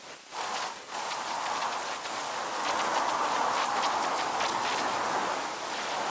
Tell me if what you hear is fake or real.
real